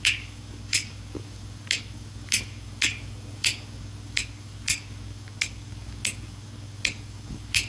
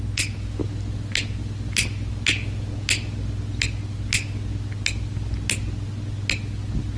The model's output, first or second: first